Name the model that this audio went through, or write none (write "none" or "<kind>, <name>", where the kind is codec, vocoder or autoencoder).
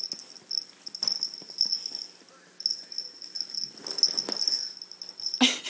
none